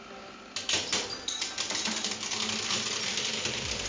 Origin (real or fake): real